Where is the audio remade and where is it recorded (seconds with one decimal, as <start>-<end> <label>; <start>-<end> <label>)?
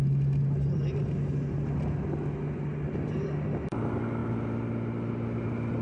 0.0-5.8 recorded